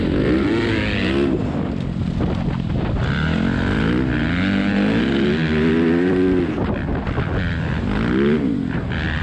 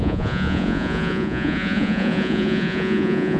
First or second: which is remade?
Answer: second